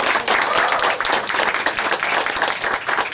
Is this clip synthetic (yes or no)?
no